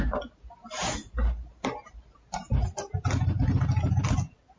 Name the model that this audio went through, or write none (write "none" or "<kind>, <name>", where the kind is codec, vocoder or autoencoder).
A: none